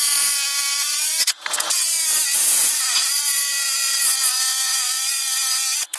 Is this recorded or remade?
remade